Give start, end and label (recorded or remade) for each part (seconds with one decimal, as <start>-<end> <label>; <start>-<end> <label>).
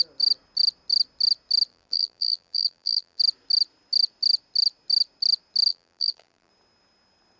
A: 0.0-1.7 recorded; 1.7-3.2 remade; 3.2-5.7 recorded; 5.7-6.5 remade; 6.5-7.4 recorded